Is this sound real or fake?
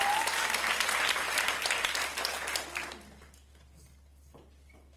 real